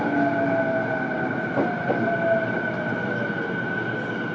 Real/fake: real